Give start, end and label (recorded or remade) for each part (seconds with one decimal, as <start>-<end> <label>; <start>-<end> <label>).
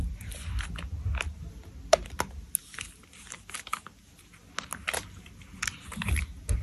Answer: 0.0-6.6 recorded